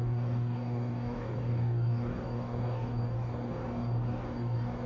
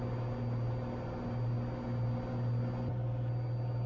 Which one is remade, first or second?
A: first